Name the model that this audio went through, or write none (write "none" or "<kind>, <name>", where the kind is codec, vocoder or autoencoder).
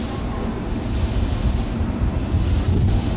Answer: vocoder, BigVGAN v2